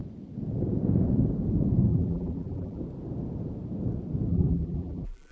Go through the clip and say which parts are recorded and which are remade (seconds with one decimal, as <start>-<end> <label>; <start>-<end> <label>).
0.0-1.9 recorded; 1.9-2.8 remade; 2.8-4.3 recorded; 4.3-5.3 remade